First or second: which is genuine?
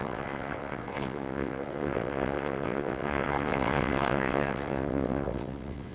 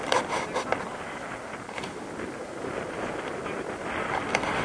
second